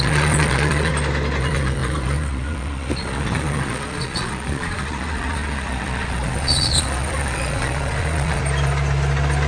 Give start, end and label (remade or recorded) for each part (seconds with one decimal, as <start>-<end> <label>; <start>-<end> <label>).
0.0-0.9 remade; 0.9-1.4 recorded; 1.4-8.4 remade; 8.4-9.5 recorded